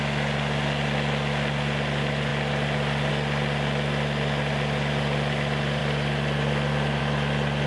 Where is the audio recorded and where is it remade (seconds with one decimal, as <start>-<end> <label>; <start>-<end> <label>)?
0.0-7.7 recorded